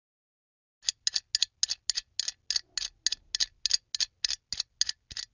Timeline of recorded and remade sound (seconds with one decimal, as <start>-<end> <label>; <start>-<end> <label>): 0.0-5.3 recorded